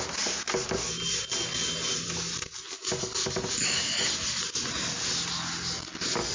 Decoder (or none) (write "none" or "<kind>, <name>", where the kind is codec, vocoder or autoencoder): none